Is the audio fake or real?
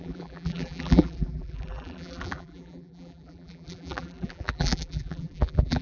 fake